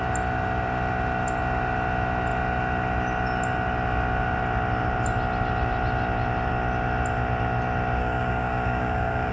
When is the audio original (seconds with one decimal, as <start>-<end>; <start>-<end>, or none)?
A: 0.0-8.0